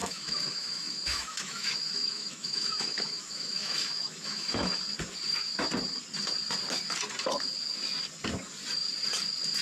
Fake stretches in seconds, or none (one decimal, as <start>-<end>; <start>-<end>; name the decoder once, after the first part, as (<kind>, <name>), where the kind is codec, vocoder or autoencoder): 0.0-4.8 (autoencoder, DAC-VAE)